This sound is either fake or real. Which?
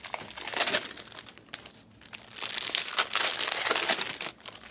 real